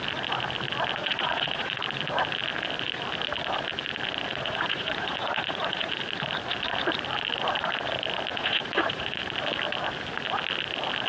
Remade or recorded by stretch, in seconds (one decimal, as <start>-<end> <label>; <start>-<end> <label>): 0.0-1.0 recorded; 1.0-1.8 remade; 1.8-4.3 recorded; 4.3-5.9 remade; 5.9-8.3 recorded; 8.3-9.2 remade; 9.2-11.1 recorded

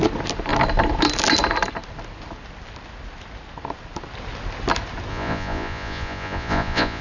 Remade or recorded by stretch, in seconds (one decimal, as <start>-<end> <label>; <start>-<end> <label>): 0.0-5.1 recorded; 5.1-7.0 remade